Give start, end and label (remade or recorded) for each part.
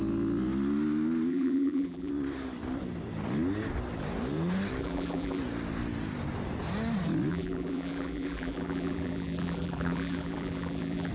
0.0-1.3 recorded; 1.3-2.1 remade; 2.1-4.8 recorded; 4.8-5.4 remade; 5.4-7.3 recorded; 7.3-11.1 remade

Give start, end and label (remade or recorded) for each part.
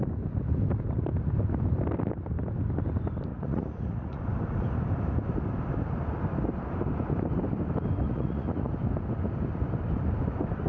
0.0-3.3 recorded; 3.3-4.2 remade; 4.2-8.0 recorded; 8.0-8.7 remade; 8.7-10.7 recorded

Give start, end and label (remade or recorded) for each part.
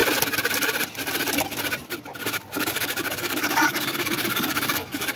0.0-2.6 recorded; 2.6-5.2 remade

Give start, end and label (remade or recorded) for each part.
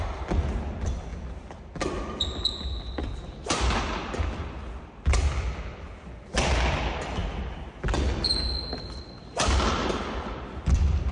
0.0-11.1 recorded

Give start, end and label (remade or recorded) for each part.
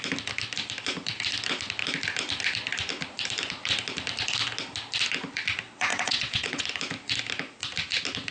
0.0-5.9 recorded; 5.9-6.6 remade; 6.6-8.3 recorded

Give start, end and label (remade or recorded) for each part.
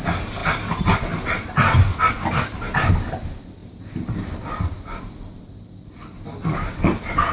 0.0-0.4 recorded; 0.4-2.9 remade; 2.9-7.3 recorded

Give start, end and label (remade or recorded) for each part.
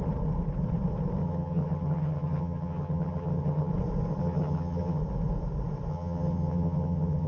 0.0-1.2 recorded; 1.2-3.7 remade; 3.7-4.2 recorded; 4.2-5.0 remade; 5.0-5.9 recorded; 5.9-7.3 remade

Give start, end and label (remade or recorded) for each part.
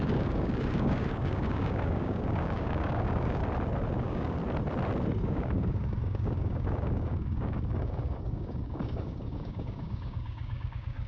0.0-3.4 remade; 3.4-4.0 recorded; 4.0-4.4 remade; 4.4-5.2 recorded; 5.2-11.1 remade